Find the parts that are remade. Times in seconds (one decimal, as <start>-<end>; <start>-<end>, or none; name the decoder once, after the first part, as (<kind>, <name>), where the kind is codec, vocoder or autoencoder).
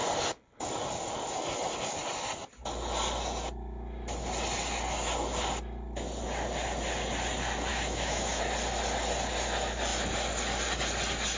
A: 7.7-8.4 (autoencoder, DAC-VAE)